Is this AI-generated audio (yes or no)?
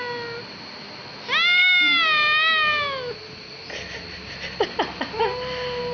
no